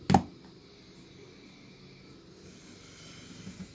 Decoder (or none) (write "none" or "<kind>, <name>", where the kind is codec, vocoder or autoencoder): none